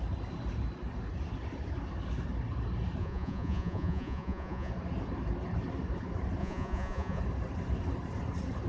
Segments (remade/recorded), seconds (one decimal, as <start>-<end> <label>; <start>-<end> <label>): 0.0-3.0 recorded; 3.0-4.7 remade; 4.7-6.4 recorded; 6.4-7.2 remade; 7.2-8.7 recorded

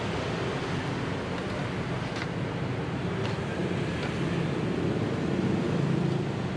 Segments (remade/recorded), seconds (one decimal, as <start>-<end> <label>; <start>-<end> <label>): 0.0-6.6 recorded

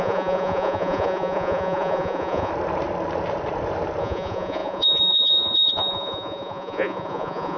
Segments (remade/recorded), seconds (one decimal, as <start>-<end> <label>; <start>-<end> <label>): 0.0-2.5 remade; 2.5-4.0 recorded; 4.0-7.6 remade

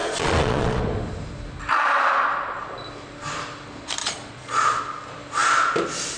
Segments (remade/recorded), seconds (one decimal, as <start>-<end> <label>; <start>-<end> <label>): 0.0-0.8 remade; 0.8-4.0 recorded; 4.0-4.8 remade; 4.8-6.2 recorded

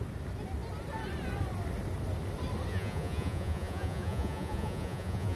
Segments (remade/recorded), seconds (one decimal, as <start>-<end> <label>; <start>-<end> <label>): 0.0-2.7 recorded; 2.7-5.4 remade

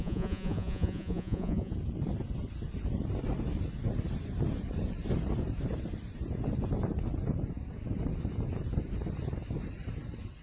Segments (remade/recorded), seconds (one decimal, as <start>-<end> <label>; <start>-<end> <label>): 0.0-1.7 remade; 1.7-10.4 recorded

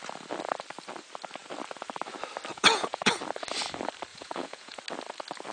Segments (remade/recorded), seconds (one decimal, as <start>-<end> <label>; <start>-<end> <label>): 0.0-2.5 recorded; 2.5-3.2 remade; 3.2-4.1 recorded; 4.1-4.8 remade; 4.8-5.5 recorded